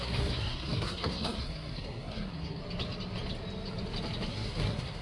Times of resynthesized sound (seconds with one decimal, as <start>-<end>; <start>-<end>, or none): 0.0-2.6; 4.3-5.0